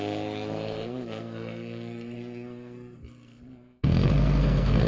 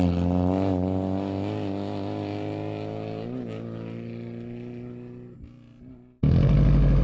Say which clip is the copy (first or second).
first